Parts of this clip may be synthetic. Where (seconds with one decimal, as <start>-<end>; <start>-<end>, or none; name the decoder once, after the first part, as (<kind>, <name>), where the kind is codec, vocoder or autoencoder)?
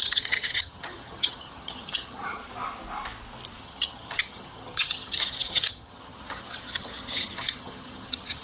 0.0-2.4 (vocoder, HiFi-GAN); 3.6-8.4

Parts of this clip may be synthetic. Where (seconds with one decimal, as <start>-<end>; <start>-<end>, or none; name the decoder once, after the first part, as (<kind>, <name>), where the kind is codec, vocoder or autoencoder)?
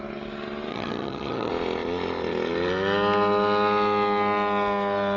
0.7-1.5 (vocoder, HiFi-GAN)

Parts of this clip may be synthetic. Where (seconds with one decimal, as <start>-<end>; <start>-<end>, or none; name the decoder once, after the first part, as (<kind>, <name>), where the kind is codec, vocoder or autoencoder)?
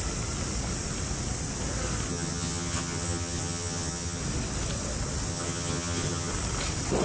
2.1-4.2 (vocoder, HiFi-GAN); 5.3-6.3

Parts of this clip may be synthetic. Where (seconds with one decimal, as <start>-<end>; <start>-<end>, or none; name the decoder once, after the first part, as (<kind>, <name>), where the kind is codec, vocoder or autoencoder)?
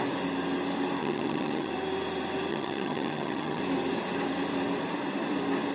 1.0-1.7 (vocoder, HiFi-GAN); 2.5-3.6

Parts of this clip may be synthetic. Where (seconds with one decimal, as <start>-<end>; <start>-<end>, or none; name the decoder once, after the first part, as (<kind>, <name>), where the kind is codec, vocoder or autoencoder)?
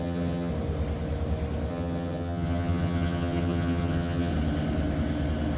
0.0-0.5 (vocoder, HiFi-GAN); 1.7-4.3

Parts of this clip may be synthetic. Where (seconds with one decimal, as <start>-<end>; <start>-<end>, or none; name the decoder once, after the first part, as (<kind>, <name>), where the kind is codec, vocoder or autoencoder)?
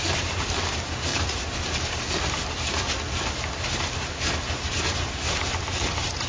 none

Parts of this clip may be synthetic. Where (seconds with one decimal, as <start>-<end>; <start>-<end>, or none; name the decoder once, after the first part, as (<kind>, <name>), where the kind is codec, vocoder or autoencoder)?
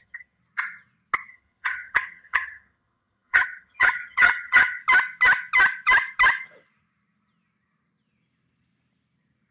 0.0-0.4 (vocoder, HiFi-GAN); 1.3-4.8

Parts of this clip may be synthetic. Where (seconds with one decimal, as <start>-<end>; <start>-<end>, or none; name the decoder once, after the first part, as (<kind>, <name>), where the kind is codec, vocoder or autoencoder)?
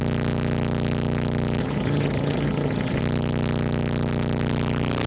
1.6-3.0 (vocoder, HiFi-GAN)